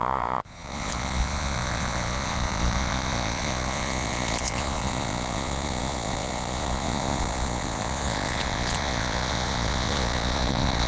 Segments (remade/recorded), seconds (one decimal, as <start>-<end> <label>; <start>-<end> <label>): 0.0-10.9 remade